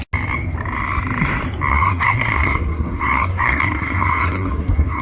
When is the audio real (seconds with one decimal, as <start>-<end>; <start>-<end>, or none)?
0.0-1.7